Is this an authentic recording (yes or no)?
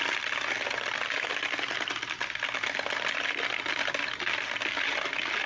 yes